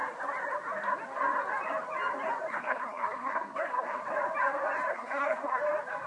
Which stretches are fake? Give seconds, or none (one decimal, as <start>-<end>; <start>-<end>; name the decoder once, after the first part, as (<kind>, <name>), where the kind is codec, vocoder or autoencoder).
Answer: 2.5-4.0 (codec, SNAC); 4.9-5.6